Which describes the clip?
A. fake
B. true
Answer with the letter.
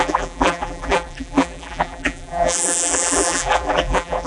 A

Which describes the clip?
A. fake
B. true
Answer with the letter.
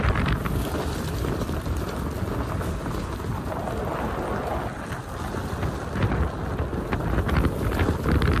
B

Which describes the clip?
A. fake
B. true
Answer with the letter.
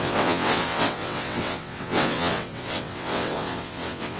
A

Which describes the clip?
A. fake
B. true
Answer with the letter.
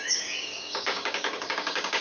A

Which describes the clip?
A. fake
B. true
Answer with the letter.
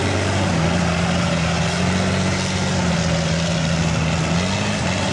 B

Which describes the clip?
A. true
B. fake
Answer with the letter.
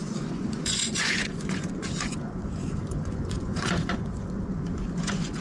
B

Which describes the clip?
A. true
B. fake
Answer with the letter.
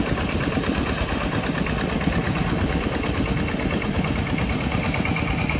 A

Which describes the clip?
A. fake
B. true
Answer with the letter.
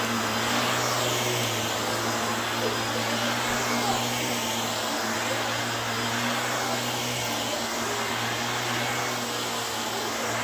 B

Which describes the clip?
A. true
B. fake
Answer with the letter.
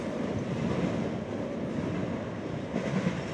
A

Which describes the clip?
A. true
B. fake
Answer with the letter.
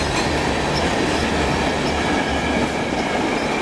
A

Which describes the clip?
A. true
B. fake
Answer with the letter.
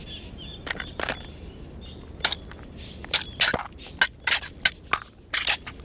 A